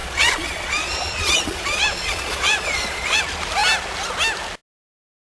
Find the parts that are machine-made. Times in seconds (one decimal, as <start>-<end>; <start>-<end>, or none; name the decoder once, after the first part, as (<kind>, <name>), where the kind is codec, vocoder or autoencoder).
0.0-3.2 (vocoder, Vocos)